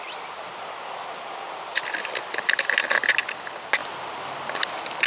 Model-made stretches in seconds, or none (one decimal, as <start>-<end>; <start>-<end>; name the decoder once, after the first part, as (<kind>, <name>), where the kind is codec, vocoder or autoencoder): none